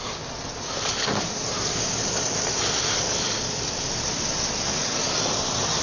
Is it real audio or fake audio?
real